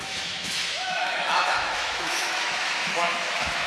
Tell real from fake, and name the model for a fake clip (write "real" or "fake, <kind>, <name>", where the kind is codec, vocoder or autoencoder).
fake, autoencoder, DAC-VAE